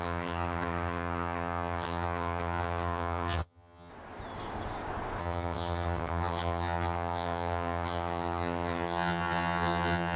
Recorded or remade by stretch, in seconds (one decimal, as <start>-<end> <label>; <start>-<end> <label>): 0.0-3.9 remade; 3.9-5.2 recorded; 5.2-10.2 remade